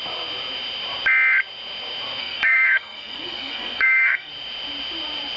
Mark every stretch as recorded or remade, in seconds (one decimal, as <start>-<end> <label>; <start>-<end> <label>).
0.0-2.2 recorded; 2.2-4.3 remade; 4.3-5.4 recorded